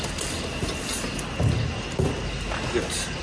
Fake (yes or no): no